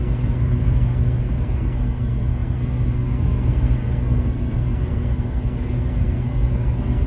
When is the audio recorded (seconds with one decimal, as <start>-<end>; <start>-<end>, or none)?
none